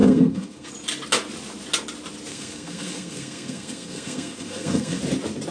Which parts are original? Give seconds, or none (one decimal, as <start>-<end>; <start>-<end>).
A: 0.7-2.3; 5.0-5.5